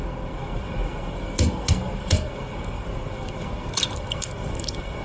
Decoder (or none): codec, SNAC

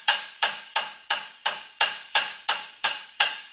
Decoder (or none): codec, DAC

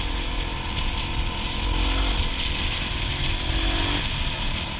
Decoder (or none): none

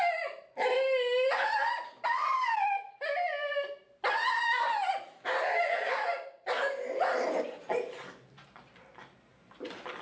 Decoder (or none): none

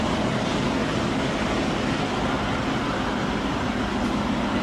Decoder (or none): none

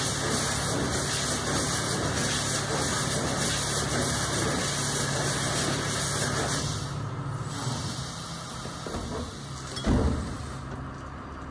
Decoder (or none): none